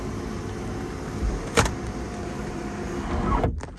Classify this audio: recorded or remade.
recorded